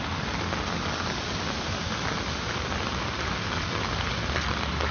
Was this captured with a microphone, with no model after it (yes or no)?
yes